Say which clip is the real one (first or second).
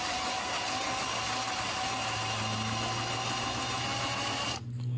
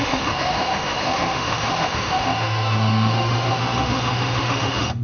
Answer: first